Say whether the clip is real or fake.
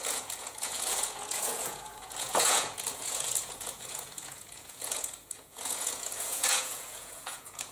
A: fake